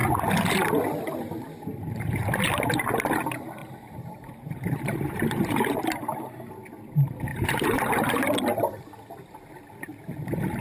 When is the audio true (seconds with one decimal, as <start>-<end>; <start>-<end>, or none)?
0.0-3.6; 6.5-7.3; 7.8-10.6